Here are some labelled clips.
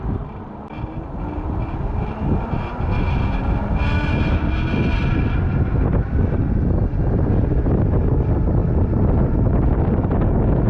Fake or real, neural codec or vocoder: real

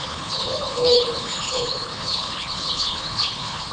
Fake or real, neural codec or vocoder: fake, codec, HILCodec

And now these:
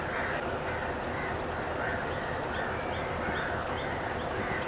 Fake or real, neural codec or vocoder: real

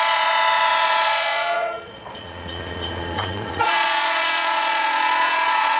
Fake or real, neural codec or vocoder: fake, vocoder, Vocos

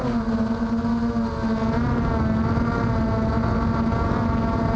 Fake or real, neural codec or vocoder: real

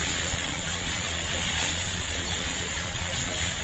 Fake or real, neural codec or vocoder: fake, vocoder, Vocos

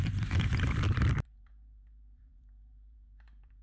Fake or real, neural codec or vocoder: fake, vocoder, BigVGAN v2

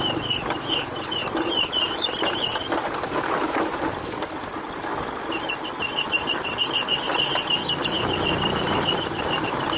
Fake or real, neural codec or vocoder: real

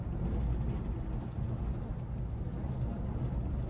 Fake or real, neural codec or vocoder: real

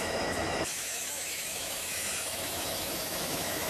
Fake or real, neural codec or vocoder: fake, autoencoder, DAC-VAE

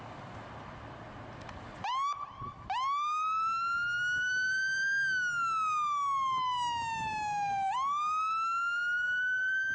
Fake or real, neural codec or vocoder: real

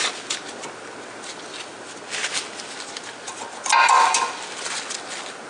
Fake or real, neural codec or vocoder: real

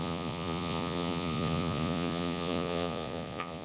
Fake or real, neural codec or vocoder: fake, vocoder, Vocos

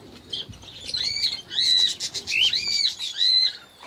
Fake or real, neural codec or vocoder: real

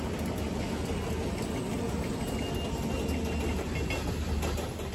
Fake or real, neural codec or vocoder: real